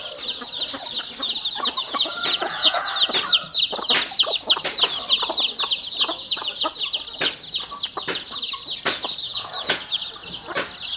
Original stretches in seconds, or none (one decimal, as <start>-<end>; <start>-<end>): 0.0-1.8; 2.9-6.1; 6.7-9.3; 10.0-11.0